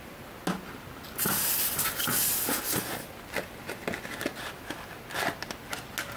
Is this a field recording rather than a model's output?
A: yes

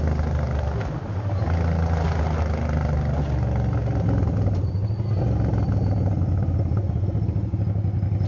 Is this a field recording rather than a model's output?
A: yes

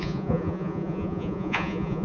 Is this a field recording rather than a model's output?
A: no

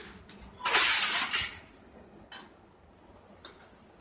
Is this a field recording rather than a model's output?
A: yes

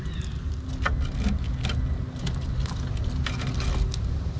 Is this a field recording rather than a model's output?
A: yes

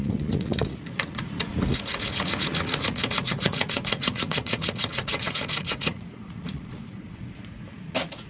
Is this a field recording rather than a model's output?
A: no